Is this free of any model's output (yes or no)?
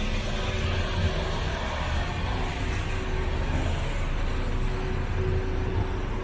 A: yes